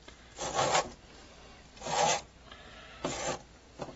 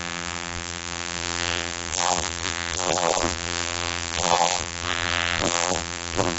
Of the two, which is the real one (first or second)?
first